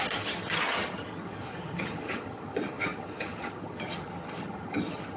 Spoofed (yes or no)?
yes